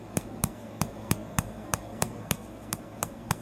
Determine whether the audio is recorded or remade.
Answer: remade